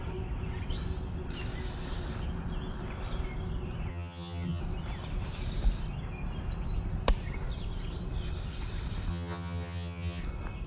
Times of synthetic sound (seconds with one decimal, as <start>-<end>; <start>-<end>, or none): 3.9-4.6; 9.1-10.2